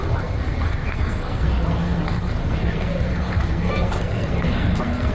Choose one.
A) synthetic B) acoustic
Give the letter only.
A